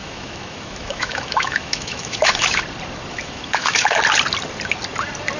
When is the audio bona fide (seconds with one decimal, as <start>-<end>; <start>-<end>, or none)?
2.6-3.1; 4.0-5.4